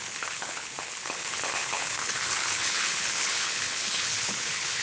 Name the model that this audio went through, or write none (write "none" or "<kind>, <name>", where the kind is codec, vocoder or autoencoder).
codec, HILCodec